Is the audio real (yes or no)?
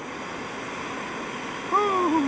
yes